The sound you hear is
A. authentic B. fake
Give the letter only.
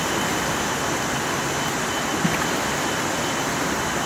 A